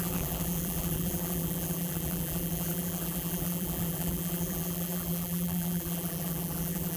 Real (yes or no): no